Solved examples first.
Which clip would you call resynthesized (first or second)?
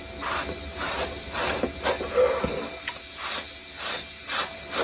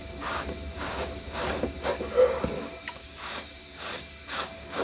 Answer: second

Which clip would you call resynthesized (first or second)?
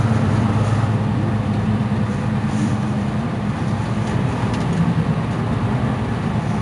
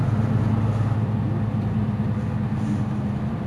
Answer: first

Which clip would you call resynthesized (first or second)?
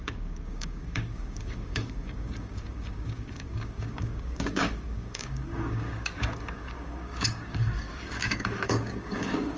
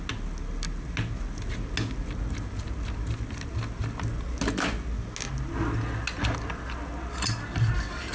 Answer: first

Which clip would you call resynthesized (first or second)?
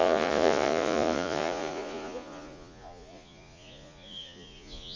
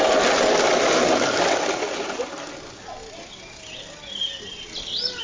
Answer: first